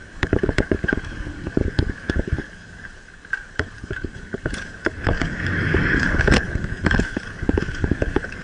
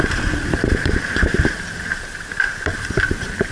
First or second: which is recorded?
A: second